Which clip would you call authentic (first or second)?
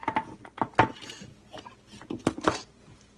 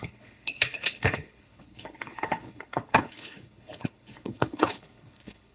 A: first